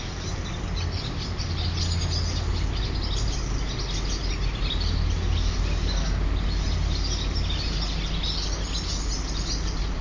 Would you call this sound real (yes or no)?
yes